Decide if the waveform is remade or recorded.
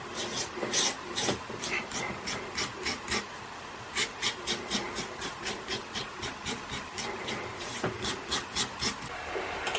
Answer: recorded